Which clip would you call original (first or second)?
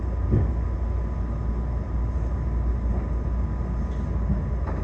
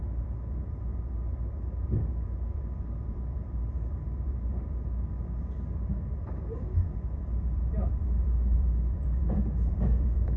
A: first